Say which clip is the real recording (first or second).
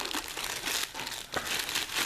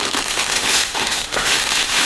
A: first